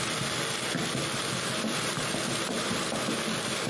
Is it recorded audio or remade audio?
recorded